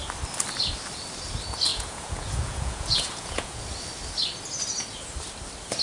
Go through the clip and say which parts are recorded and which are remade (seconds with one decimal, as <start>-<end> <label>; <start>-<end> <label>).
0.0-1.7 recorded; 1.7-3.6 remade; 3.6-5.8 recorded